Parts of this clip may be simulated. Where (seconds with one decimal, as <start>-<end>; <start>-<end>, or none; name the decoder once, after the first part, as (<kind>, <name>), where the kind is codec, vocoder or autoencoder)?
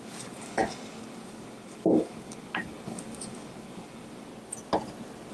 0.0-4.3 (codec, DAC)